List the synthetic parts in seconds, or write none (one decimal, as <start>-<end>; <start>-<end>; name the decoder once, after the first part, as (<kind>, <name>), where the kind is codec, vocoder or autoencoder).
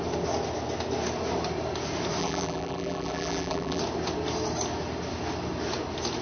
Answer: 2.2-3.8 (vocoder, BigVGAN v2)